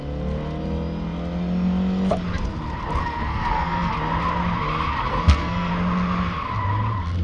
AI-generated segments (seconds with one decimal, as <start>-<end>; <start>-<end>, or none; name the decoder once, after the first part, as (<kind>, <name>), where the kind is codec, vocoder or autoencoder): 3.0-3.9 (codec, SNAC); 5.1-5.7